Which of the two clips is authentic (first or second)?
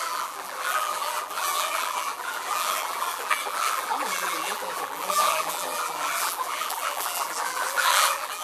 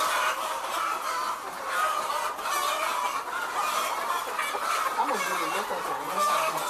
second